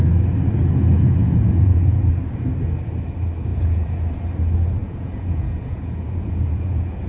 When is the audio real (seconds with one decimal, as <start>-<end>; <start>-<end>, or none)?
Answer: 0.0-1.2; 2.1-3.5; 4.0-4.8